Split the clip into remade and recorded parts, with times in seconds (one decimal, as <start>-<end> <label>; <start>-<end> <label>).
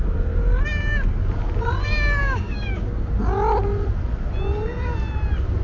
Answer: 0.0-2.2 recorded; 2.2-3.1 remade; 3.1-5.6 recorded